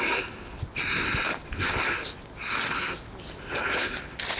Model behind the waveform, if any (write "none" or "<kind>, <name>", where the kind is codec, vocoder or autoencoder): none